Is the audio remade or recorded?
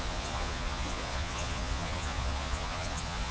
remade